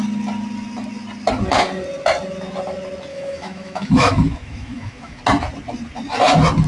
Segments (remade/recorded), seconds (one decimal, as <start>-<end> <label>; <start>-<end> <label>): 0.0-3.1 recorded; 3.1-5.2 remade; 5.2-6.7 recorded